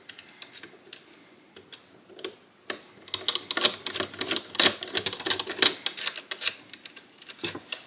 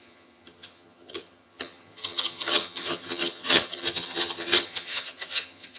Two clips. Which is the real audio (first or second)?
first